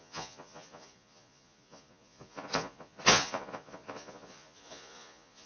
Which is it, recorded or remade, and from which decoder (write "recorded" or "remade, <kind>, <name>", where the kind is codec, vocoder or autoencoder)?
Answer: remade, vocoder, Vocos